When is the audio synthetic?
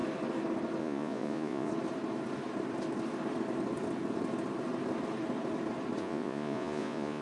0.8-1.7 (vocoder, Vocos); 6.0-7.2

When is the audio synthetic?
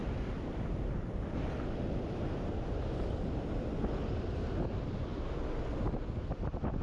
none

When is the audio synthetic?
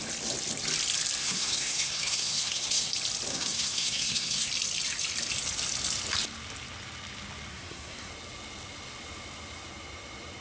1.2-2.9 (codec, SNAC); 3.3-4.5; 7.5-8.1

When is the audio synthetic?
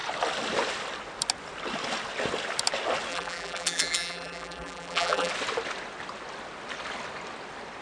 3.1-5.3 (vocoder, BigVGAN v2)